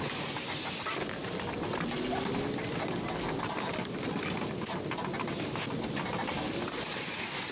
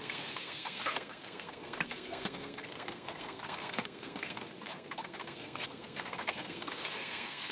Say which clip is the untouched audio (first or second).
first